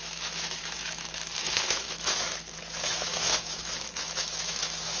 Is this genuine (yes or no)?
no